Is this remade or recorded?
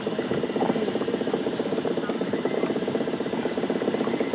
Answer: recorded